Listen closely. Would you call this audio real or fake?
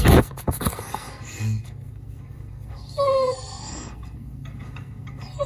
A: fake